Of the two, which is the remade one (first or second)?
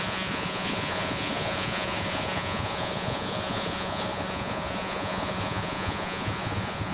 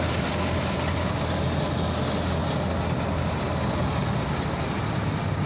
first